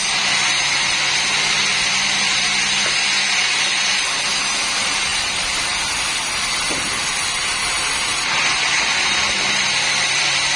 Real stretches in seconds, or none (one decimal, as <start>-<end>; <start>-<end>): 0.0-5.1; 5.8-10.6